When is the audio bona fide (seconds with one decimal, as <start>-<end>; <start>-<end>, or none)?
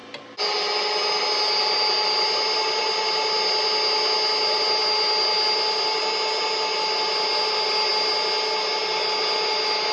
0.0-9.9